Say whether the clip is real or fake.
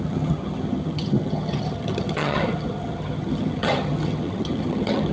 fake